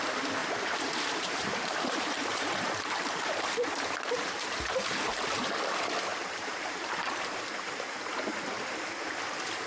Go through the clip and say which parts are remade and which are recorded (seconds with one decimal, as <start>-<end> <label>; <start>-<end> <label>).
0.0-0.4 recorded; 0.4-5.0 remade; 5.0-6.1 recorded; 6.1-8.1 remade; 8.1-9.7 recorded